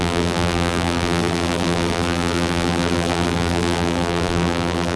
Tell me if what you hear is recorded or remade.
remade